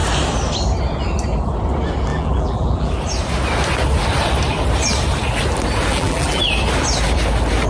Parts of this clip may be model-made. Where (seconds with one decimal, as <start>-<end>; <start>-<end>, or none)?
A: 2.1-2.9; 5.9-6.4